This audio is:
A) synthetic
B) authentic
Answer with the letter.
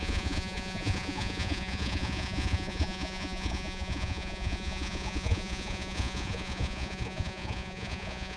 A